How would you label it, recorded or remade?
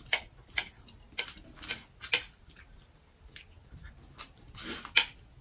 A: recorded